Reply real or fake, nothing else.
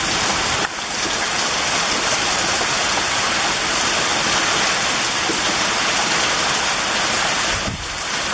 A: real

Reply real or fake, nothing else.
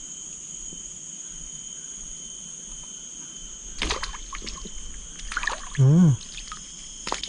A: real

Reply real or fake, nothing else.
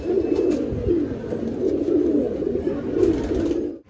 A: real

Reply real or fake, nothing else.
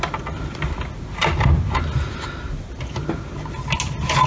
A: real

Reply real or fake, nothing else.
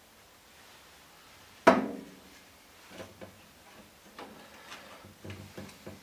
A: real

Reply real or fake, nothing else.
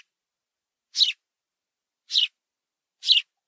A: real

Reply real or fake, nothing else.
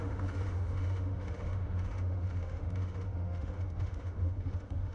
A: fake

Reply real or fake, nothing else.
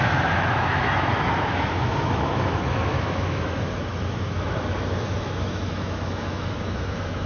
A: fake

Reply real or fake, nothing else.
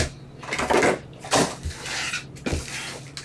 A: real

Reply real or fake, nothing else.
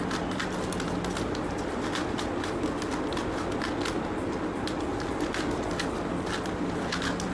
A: real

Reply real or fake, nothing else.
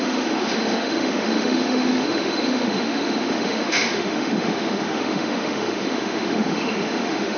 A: fake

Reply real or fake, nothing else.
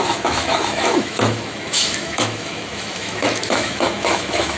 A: fake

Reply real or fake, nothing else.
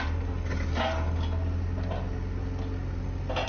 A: real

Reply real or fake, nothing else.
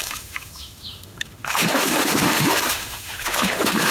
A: fake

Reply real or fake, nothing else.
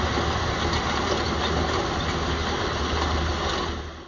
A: real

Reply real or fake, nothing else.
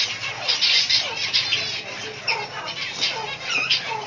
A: real